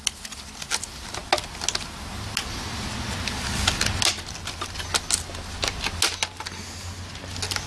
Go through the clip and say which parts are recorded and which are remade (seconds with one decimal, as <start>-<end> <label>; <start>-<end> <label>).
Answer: 0.0-7.7 recorded